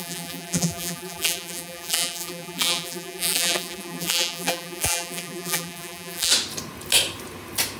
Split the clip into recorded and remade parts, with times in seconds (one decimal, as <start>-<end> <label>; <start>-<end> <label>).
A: 0.0-6.3 remade; 6.3-7.8 recorded